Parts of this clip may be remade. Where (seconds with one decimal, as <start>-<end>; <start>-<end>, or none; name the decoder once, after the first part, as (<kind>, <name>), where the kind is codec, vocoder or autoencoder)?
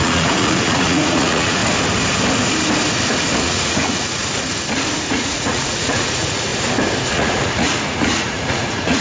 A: 0.0-1.6 (vocoder, Vocos); 3.4-4.2; 5.1-6.5; 7.1-9.0